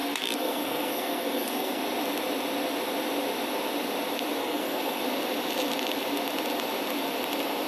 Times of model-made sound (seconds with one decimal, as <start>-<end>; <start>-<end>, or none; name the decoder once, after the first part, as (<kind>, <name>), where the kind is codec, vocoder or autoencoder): 0.0-1.8 (codec, SNAC); 4.4-5.0